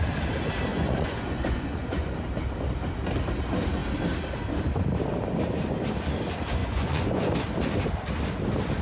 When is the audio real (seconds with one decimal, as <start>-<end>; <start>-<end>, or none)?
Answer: 0.0-0.7; 2.1-6.6; 7.3-8.8